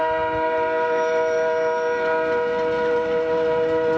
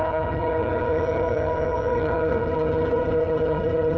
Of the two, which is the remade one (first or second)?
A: second